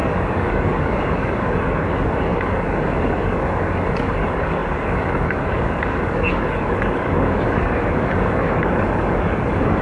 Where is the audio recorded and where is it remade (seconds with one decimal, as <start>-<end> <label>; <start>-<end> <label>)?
0.0-9.8 remade